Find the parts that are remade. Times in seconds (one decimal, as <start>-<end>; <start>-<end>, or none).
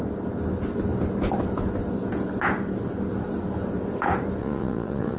4.4-5.2